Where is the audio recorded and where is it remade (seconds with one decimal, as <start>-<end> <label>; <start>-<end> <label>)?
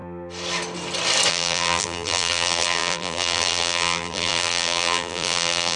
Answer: 0.0-1.3 recorded; 1.3-5.8 remade